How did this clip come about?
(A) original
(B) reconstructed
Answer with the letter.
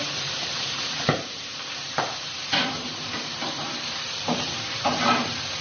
B